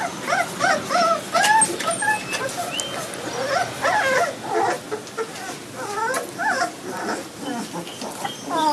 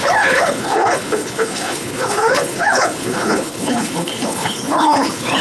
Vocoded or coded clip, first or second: second